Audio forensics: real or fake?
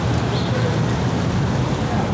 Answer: real